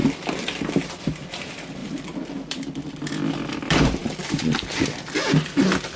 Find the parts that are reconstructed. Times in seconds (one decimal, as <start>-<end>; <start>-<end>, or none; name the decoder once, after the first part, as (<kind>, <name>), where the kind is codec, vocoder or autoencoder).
1.8-3.1 (vocoder, BigVGAN v2); 4.0-6.0